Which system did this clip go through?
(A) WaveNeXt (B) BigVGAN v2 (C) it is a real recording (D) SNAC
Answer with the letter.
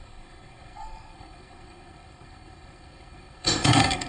D